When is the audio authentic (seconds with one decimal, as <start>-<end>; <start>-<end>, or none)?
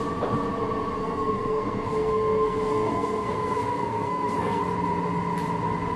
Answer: 0.0-1.0; 4.6-6.0